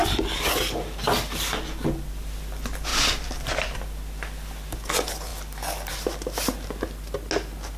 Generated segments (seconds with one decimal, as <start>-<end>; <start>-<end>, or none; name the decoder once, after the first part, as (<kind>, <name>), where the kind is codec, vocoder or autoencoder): 2.9-3.8 (vocoder, BigVGAN v2)